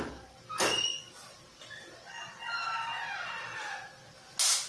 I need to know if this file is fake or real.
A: real